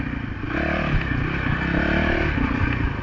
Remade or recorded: recorded